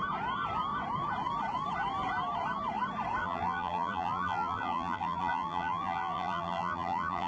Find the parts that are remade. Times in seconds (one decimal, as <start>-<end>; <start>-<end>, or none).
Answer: 3.2-7.3